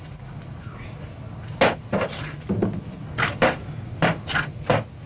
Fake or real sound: real